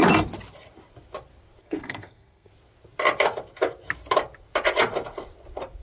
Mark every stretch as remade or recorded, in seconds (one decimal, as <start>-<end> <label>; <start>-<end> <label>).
0.0-1.6 recorded; 1.6-2.5 remade; 2.5-5.8 recorded